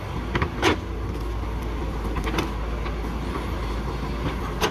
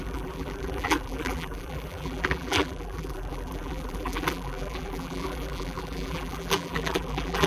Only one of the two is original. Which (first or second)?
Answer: first